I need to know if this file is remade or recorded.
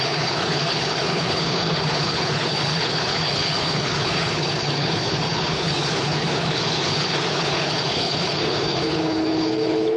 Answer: remade